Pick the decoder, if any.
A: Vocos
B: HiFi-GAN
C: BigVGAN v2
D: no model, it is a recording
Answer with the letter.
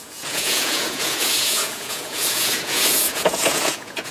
A